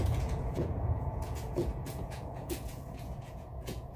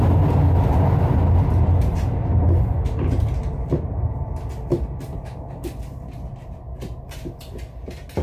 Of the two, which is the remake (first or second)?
first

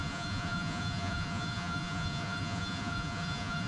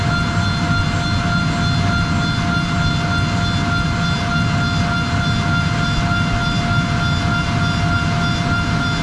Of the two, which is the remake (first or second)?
first